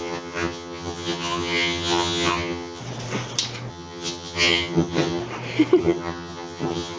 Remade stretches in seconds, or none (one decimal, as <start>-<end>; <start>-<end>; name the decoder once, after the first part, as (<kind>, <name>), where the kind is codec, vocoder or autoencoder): 0.0-2.8 (vocoder, HiFi-GAN); 3.7-5.2; 5.8-7.0